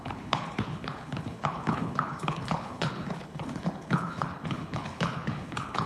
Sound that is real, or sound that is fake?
fake